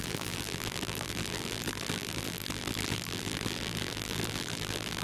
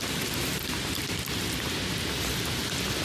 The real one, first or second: second